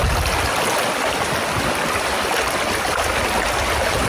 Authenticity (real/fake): real